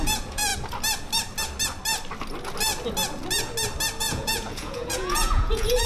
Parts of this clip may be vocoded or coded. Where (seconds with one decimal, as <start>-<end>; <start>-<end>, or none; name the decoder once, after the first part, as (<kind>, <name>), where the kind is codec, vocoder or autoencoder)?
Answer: 0.0-0.5 (vocoder, Vocos); 4.0-5.9